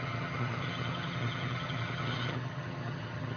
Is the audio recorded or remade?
remade